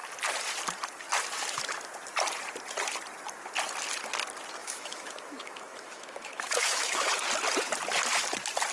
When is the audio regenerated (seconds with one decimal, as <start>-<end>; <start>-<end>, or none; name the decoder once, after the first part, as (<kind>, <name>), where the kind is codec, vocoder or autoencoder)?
4.6-7.1 (autoencoder, DAC-VAE)